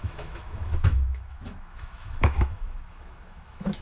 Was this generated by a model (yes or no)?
yes